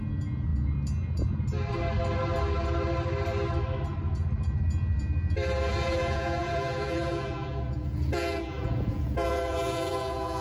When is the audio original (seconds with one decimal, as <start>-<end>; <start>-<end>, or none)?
0.0-5.7